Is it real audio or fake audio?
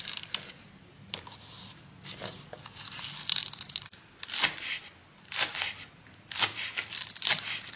real